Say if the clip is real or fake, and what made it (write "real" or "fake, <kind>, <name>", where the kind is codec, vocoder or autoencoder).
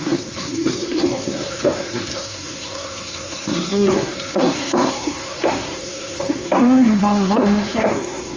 fake, codec, SNAC